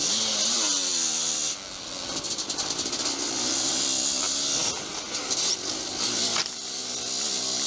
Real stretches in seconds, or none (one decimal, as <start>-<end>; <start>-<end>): 0.0-7.7